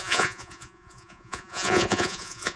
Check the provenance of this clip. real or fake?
fake